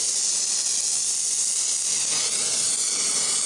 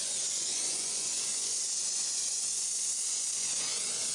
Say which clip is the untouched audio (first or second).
first